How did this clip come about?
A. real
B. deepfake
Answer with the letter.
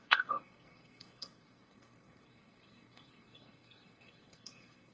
B